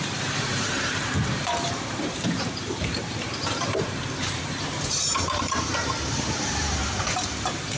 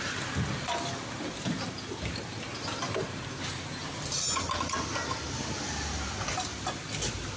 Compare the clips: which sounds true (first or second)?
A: second